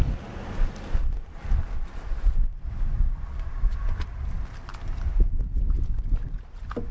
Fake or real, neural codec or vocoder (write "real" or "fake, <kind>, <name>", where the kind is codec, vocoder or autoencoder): real